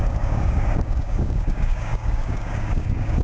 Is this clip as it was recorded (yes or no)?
no